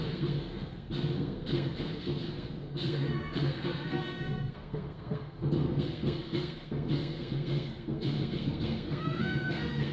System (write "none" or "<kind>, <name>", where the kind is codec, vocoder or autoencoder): codec, SNAC